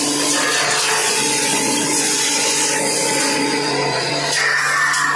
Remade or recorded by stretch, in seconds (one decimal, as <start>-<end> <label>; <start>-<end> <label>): 0.0-1.0 recorded; 1.0-4.1 remade; 4.1-5.2 recorded